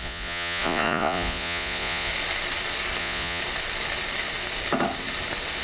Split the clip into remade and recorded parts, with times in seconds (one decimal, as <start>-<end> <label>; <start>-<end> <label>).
0.0-2.1 remade; 2.1-3.0 recorded; 3.0-3.4 remade; 3.4-5.6 recorded